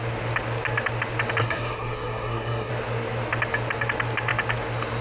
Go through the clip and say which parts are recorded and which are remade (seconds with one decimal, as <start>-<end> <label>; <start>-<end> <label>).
0.0-1.4 recorded; 1.4-2.7 remade; 2.7-5.0 recorded